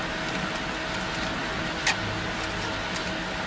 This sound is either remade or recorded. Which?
recorded